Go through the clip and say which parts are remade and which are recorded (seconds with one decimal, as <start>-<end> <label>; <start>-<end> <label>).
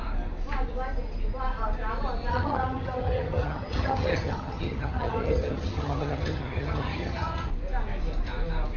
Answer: 0.0-2.3 recorded; 2.3-7.5 remade; 7.5-8.8 recorded